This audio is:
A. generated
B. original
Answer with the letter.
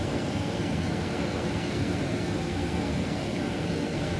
A